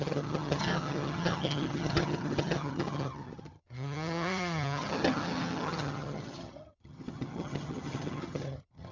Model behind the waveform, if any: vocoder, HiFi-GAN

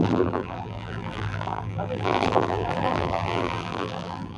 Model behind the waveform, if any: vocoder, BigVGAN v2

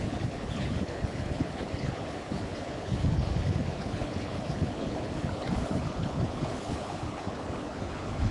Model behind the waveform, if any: codec, HILCodec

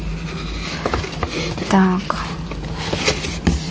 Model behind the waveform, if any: none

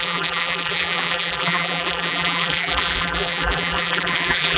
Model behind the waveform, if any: vocoder, BigVGAN v2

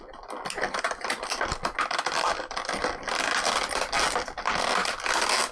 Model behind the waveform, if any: none